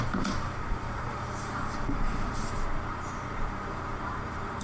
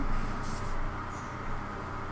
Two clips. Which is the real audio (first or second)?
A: second